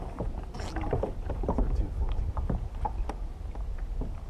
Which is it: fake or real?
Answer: real